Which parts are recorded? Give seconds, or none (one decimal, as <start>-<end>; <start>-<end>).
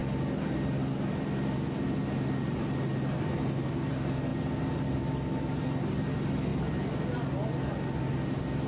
0.0-8.7